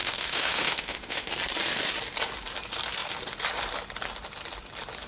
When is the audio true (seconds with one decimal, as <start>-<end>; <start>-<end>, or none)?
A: 1.3-5.1